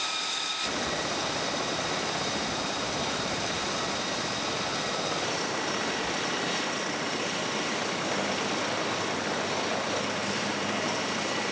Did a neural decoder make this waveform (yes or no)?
yes